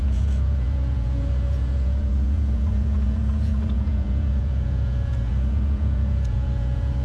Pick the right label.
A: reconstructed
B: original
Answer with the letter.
A